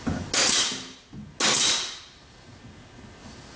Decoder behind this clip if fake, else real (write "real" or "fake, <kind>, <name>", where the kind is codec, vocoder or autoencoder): real